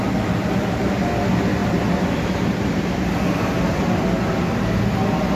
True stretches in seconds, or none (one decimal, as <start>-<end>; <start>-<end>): 0.0-5.4